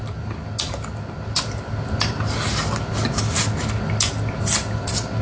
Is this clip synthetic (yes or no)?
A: no